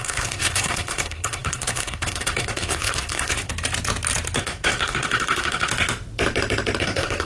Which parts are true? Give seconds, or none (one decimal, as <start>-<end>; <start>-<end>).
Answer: 3.5-4.4; 5.7-6.8